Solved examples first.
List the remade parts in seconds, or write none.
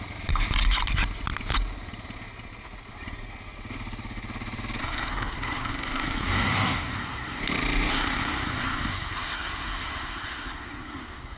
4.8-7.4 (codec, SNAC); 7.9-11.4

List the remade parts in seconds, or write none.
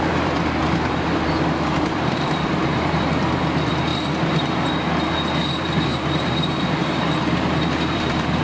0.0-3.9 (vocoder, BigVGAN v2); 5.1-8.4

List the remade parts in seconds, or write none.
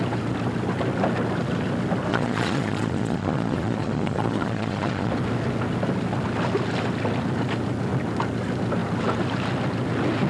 2.1-5.1 (vocoder, Vocos)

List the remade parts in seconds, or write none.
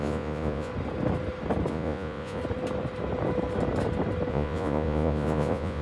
0.0-0.7 (vocoder, Vocos); 1.7-2.4; 4.3-5.8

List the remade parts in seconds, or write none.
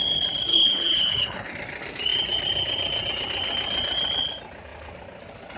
0.5-1.5 (codec, HILCodec)